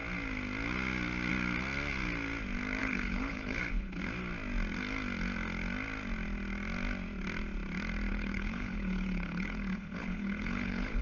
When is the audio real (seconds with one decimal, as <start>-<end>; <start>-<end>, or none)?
0.0-2.8; 4.0-8.1